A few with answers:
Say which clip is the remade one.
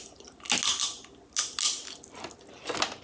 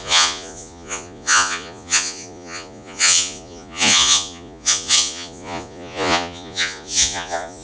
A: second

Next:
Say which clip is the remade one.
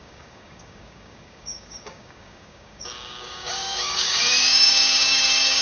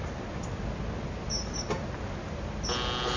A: first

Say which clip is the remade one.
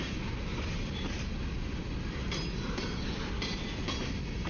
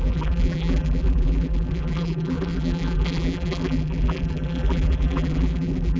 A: second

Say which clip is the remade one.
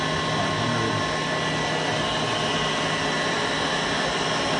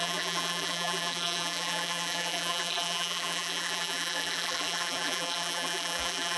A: second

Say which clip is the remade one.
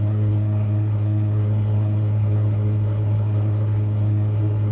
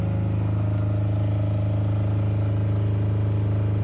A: first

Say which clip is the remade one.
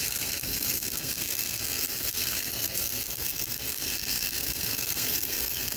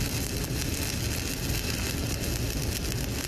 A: first